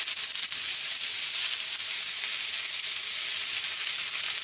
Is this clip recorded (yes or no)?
yes